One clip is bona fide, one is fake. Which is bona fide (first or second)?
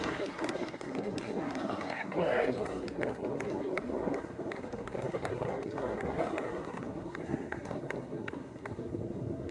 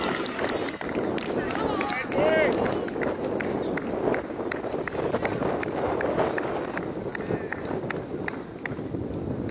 second